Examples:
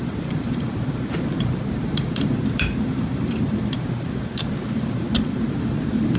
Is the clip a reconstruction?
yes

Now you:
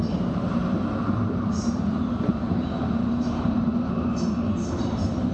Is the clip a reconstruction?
yes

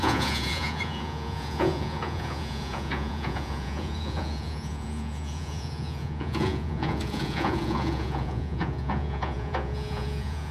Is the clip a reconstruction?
yes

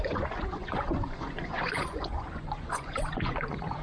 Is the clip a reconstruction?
yes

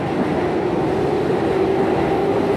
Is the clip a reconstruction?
no